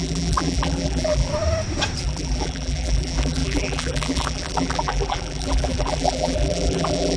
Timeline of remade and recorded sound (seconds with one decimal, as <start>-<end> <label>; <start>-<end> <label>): 0.0-1.3 remade; 1.3-2.0 recorded; 2.0-7.2 remade